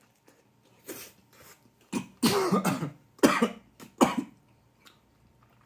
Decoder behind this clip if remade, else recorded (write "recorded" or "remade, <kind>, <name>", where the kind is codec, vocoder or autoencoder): recorded